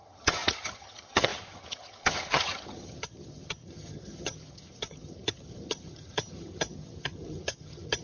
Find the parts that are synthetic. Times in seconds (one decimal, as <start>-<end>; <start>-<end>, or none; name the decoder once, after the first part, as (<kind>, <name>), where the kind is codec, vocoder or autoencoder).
0.0-8.0 (vocoder, HiFi-GAN)